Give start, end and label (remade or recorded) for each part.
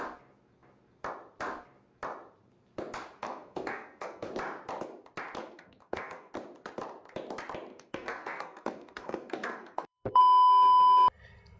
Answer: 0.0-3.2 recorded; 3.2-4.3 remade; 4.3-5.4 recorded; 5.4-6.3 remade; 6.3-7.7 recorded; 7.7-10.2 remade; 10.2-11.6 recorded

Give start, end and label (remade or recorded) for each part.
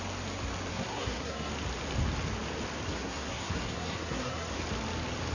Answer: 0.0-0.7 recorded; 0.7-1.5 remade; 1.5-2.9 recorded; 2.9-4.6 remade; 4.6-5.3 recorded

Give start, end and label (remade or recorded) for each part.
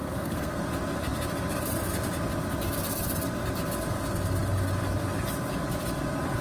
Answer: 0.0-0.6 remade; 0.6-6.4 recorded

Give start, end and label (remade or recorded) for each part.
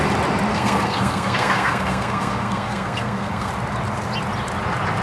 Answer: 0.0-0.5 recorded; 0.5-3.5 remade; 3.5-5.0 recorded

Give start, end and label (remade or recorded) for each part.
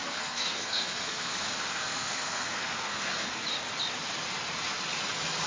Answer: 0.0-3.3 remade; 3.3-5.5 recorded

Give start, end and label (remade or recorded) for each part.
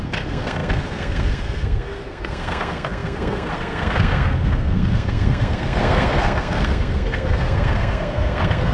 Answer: 0.0-8.7 remade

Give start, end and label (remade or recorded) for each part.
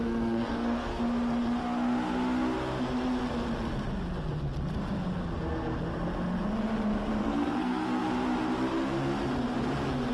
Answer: 0.0-1.0 remade; 1.0-7.2 recorded; 7.2-8.1 remade; 8.1-10.1 recorded